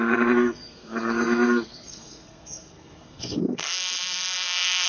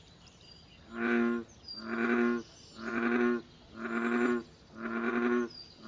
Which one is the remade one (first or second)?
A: first